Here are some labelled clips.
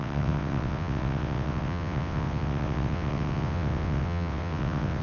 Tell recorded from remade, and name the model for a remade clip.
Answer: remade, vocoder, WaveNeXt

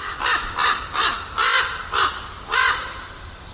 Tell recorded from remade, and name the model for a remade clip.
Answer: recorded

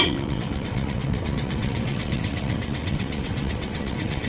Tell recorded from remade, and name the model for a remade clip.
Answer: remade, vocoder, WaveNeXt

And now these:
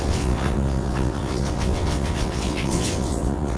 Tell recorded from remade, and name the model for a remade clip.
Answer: remade, vocoder, WaveNeXt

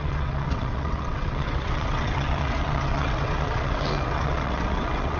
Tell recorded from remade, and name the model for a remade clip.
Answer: remade, vocoder, WaveNeXt